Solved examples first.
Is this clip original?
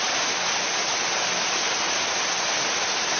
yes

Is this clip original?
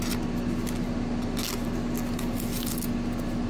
yes